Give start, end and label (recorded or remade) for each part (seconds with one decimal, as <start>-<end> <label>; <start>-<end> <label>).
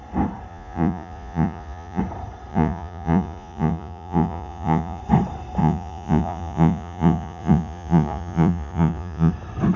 0.0-0.5 recorded; 0.5-2.0 remade; 2.0-2.5 recorded; 2.5-5.0 remade; 5.0-5.6 recorded; 5.6-9.3 remade; 9.3-9.8 recorded